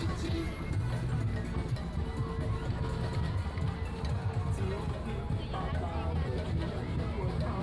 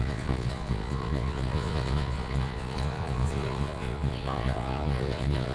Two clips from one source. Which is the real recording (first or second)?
first